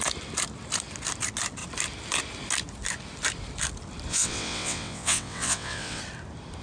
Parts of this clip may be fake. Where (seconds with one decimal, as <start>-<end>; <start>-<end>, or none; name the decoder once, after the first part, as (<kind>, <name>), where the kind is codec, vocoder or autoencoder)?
4.1-6.0 (vocoder, WaveNeXt)

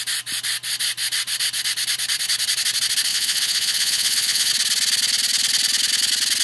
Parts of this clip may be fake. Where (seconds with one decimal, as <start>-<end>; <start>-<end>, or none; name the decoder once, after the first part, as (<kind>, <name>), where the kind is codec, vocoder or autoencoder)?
3.1-4.5 (vocoder, WaveNeXt)

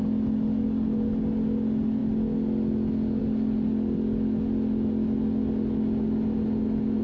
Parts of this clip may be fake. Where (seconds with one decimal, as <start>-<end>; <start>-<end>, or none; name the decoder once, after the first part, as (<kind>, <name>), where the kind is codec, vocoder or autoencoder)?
none

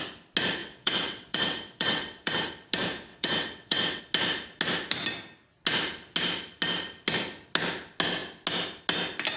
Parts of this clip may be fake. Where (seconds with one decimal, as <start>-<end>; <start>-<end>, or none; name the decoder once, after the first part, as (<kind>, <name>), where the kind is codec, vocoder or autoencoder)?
0.6-2.5 (vocoder, WaveNeXt); 3.1-4.0

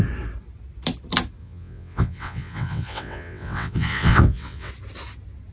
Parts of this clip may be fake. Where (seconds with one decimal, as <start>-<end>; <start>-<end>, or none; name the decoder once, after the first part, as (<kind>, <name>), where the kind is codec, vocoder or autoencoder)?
1.4-4.7 (vocoder, WaveNeXt)